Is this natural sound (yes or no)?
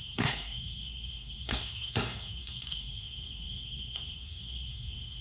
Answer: no